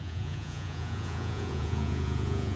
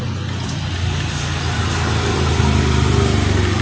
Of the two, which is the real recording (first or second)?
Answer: second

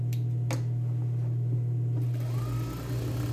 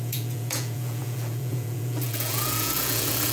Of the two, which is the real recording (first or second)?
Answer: first